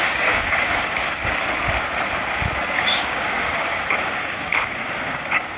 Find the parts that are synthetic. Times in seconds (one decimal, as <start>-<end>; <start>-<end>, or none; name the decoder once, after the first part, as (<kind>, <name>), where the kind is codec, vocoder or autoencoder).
0.0-1.0 (codec, DAC); 2.6-5.6